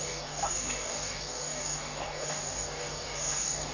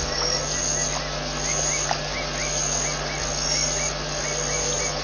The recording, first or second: second